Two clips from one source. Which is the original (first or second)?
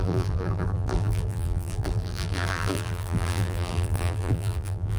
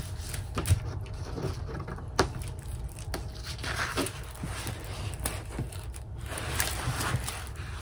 second